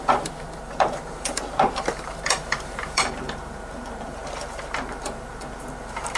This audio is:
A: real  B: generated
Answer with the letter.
B